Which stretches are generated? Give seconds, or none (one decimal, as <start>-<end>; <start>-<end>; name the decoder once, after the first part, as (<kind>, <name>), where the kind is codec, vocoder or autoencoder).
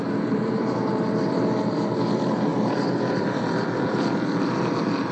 0.0-5.1 (vocoder, BigVGAN v2)